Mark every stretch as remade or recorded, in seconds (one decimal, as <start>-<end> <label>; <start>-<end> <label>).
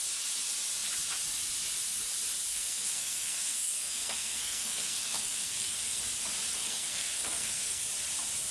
0.0-2.5 recorded; 2.5-6.0 remade; 6.0-6.6 recorded; 6.6-7.8 remade; 7.8-8.5 recorded